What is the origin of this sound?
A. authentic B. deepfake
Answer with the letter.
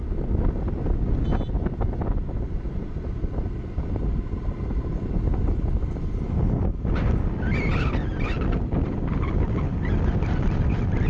A